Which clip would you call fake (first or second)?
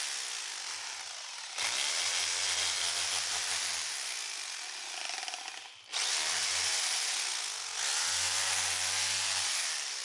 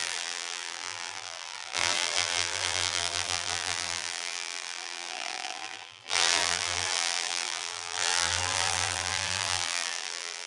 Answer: second